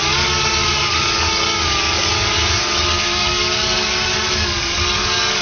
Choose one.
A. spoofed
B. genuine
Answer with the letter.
A